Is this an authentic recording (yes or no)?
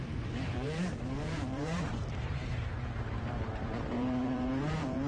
no